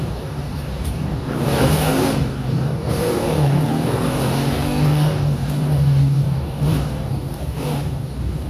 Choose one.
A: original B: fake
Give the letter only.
B